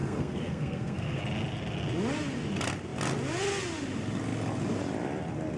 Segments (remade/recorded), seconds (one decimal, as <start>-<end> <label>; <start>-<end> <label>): 0.0-1.2 remade; 1.2-5.6 recorded